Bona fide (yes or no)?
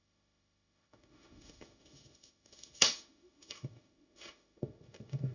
no